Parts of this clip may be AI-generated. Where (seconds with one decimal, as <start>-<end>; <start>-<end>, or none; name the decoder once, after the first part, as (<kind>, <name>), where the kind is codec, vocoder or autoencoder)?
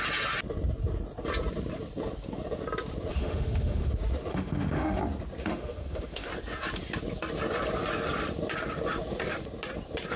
3.1-3.9 (autoencoder, DAC-VAE); 4.3-5.0; 5.4-6.3